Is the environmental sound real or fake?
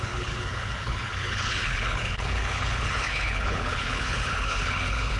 fake